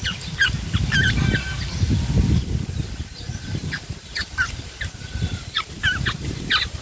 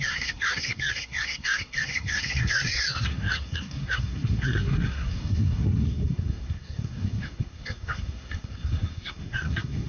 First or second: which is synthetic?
second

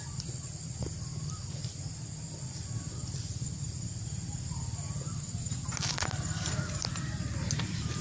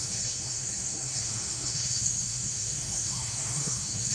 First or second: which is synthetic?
second